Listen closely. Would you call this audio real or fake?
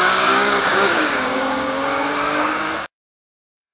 fake